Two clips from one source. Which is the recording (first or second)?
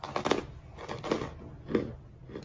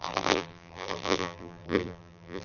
first